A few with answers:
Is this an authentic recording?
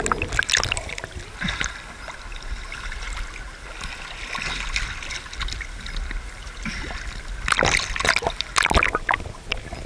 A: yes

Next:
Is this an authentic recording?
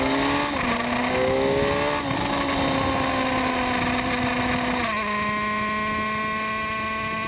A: yes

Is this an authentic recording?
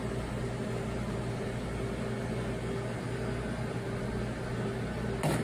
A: yes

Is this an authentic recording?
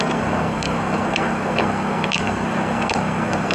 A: no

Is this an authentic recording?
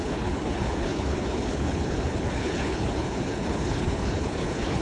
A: no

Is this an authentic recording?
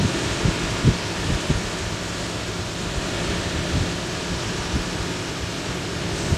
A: yes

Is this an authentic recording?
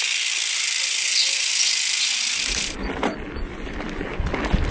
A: yes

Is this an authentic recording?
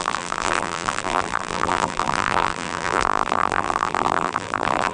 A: no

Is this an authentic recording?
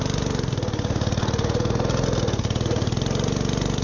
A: yes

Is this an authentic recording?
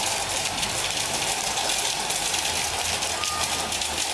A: yes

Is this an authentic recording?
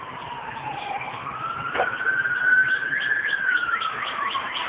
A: no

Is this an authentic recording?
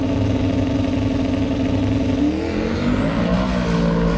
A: yes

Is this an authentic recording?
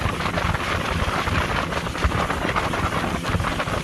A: yes